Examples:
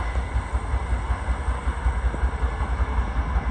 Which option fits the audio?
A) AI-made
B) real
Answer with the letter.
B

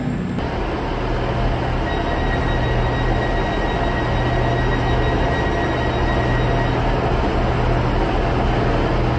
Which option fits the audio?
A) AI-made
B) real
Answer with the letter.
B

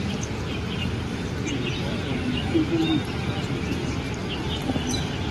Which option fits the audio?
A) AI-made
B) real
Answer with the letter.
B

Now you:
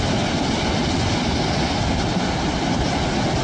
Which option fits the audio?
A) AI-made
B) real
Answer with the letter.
B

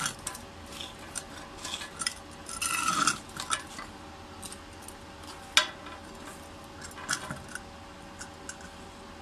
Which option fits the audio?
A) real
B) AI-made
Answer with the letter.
A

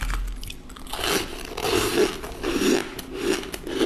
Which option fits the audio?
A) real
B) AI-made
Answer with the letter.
A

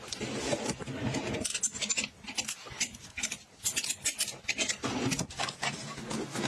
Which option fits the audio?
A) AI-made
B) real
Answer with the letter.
B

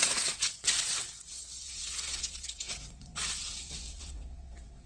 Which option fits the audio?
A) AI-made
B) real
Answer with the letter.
A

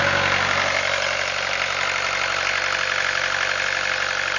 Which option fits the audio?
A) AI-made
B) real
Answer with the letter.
B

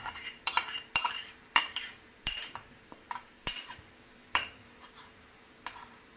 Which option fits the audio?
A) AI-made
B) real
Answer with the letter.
A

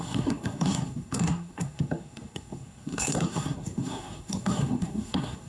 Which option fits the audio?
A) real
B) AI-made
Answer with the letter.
B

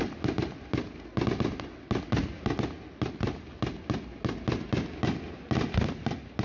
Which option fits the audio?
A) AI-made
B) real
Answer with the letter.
B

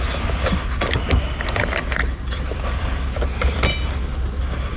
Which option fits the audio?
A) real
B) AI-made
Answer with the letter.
A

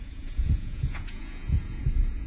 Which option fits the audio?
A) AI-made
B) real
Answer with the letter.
A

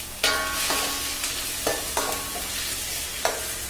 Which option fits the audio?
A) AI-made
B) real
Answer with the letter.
B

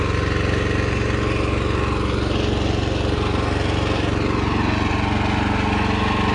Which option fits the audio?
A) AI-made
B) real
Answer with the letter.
B